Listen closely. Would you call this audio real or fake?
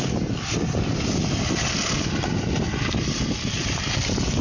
real